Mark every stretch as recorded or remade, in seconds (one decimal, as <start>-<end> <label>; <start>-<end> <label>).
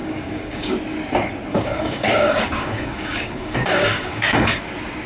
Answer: 0.0-0.7 remade; 0.7-1.5 recorded; 1.5-4.6 remade; 4.6-5.1 recorded